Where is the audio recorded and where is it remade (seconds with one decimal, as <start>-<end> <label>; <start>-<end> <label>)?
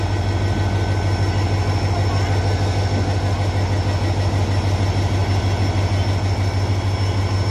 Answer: 0.0-7.5 recorded